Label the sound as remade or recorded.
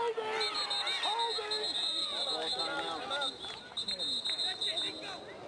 recorded